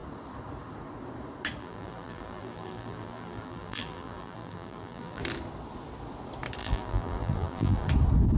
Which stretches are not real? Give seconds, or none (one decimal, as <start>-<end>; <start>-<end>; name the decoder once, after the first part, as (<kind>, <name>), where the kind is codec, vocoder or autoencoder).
1.6-5.2 (vocoder, BigVGAN v2); 6.6-7.9